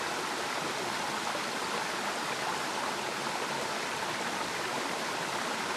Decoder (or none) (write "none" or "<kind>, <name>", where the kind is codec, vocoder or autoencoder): none